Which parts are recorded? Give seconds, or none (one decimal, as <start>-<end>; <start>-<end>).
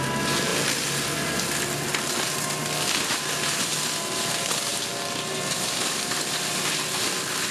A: 0.0-7.5